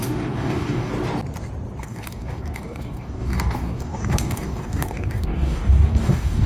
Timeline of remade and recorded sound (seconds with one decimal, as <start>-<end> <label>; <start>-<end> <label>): 0.0-0.9 remade; 0.9-1.8 recorded; 1.8-6.5 remade